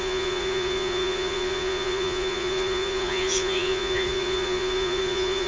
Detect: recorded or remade remade